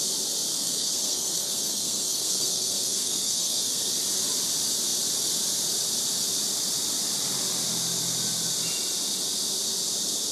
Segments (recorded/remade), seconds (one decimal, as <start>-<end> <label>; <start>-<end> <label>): 0.0-0.5 recorded; 0.5-3.9 remade; 3.9-10.3 recorded